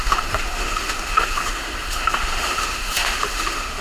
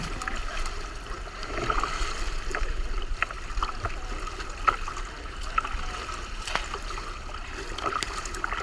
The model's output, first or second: first